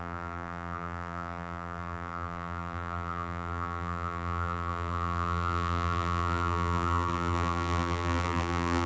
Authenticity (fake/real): fake